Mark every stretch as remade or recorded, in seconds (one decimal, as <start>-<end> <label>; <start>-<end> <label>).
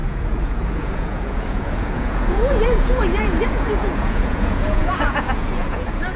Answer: 0.0-6.2 remade